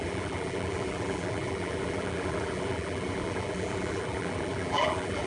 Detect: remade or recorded remade